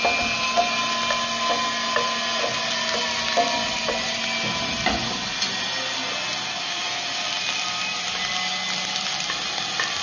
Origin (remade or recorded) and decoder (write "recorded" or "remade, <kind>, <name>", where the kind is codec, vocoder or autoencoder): recorded